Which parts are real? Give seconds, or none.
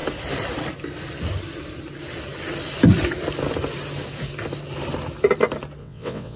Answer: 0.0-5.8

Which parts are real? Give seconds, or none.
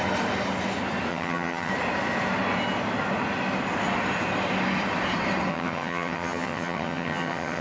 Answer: 0.0-1.1; 1.7-5.5